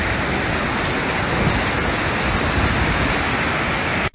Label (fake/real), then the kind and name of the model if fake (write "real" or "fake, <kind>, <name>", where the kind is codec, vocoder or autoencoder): real